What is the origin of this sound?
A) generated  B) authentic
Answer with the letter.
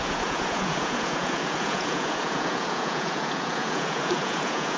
A